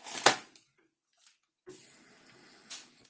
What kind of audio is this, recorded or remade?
recorded